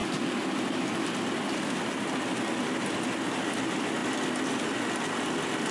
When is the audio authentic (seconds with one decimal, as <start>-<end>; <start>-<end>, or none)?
0.0-5.7